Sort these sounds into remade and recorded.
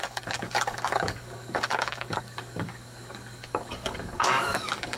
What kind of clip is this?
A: remade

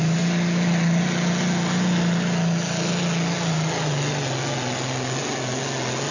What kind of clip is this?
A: recorded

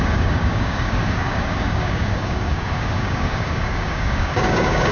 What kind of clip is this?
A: remade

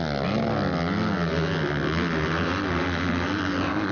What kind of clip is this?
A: recorded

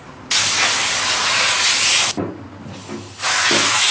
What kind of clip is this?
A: recorded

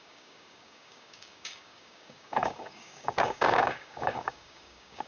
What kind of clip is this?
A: remade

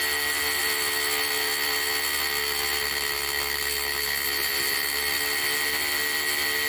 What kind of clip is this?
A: recorded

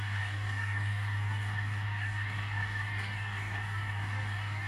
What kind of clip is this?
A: remade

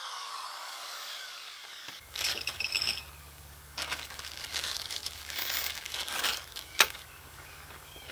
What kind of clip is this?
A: remade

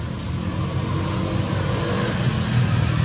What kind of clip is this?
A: recorded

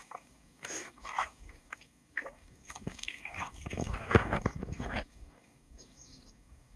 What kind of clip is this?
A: remade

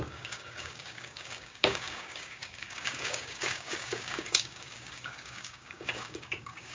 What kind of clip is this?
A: remade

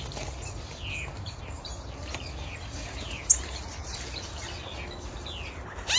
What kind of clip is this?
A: recorded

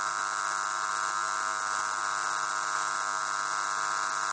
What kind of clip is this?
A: recorded